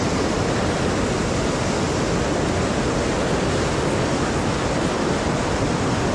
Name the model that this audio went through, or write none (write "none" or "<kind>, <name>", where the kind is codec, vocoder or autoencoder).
none